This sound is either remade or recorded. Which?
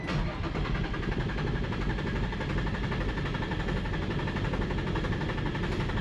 recorded